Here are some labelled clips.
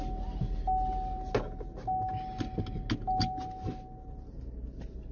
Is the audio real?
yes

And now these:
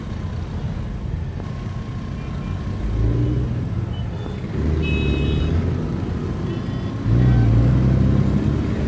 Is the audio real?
yes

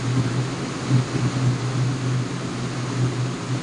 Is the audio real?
yes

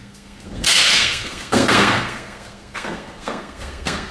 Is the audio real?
no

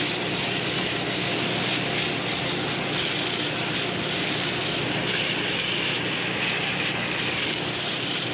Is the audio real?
yes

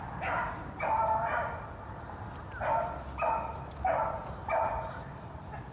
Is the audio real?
yes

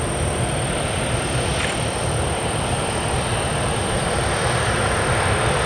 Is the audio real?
yes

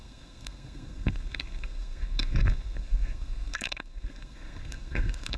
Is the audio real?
no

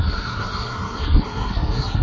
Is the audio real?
no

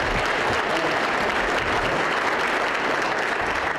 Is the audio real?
yes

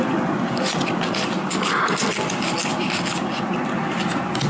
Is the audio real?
yes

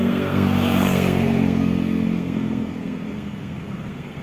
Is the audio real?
no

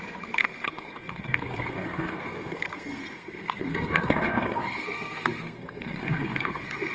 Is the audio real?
no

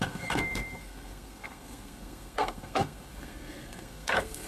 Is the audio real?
no